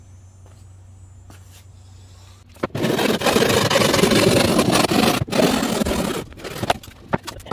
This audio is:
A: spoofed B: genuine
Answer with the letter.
B